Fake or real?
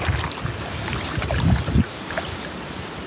real